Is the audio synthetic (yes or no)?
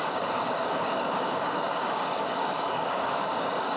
yes